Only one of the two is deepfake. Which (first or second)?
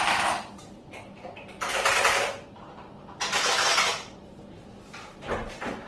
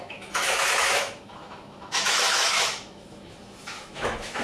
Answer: second